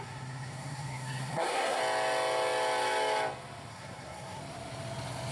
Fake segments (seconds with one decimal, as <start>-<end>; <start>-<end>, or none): 0.0-1.8; 3.7-4.4